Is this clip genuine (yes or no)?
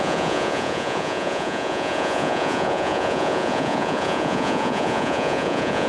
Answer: no